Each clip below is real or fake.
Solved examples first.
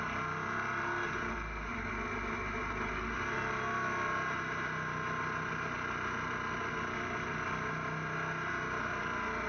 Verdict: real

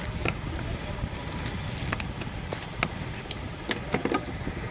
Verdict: real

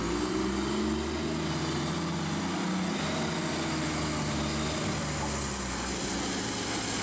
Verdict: real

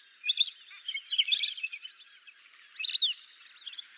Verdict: real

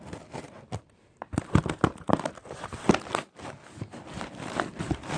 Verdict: real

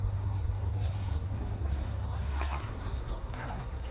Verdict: fake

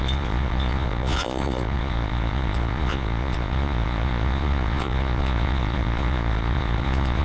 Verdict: fake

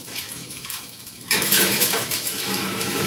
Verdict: fake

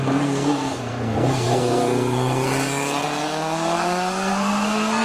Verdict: fake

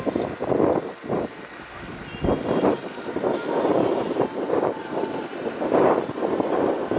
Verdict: real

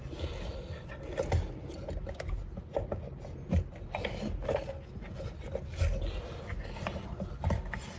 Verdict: real